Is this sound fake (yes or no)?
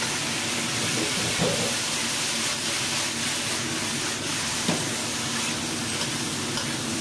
no